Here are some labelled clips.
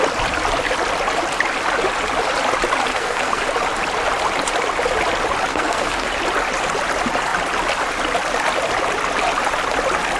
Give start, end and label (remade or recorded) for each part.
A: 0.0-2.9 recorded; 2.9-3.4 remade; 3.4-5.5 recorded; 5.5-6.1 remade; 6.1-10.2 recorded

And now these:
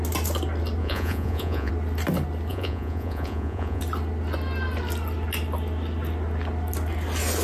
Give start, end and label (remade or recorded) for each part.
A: 0.0-0.8 recorded; 0.8-1.7 remade; 1.7-2.5 recorded; 2.5-3.8 remade; 3.8-7.4 recorded

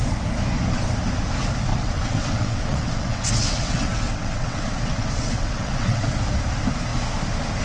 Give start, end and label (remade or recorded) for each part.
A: 0.0-1.7 recorded; 1.7-6.2 remade; 6.2-7.6 recorded

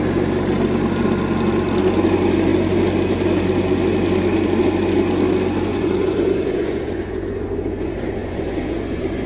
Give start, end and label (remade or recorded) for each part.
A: 0.0-5.7 recorded; 5.7-9.3 remade